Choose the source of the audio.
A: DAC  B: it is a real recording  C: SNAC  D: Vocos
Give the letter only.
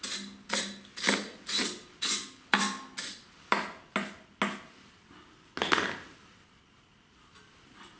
B